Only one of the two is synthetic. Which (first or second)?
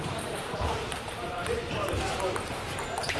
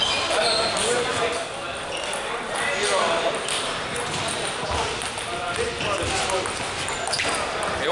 first